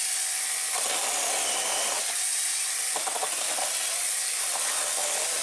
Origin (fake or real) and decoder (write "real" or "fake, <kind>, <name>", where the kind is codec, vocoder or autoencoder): real